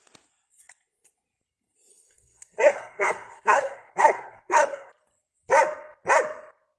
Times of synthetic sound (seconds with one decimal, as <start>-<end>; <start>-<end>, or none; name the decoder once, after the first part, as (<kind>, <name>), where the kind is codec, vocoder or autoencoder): 1.9-4.9 (codec, SNAC)